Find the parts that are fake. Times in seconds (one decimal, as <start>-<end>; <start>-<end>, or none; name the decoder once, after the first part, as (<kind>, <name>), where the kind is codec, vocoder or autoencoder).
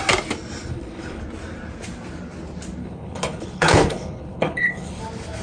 0.7-1.2 (codec, HILCodec); 2.8-5.0